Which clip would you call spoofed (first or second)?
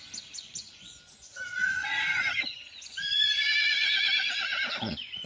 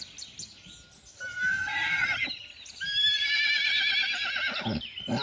first